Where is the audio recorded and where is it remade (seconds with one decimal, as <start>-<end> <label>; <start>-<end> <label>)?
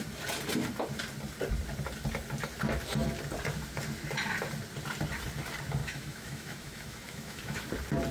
0.0-5.8 recorded; 5.8-7.6 remade; 7.6-8.1 recorded